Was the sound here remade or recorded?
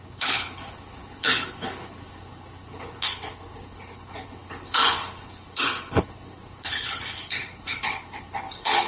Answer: remade